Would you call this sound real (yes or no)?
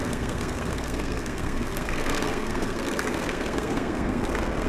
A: no